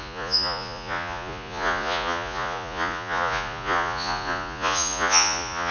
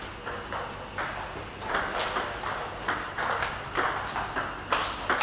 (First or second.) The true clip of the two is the second